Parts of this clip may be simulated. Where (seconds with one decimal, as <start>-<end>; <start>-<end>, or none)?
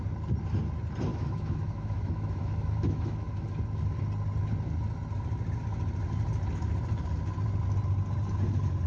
1.1-3.5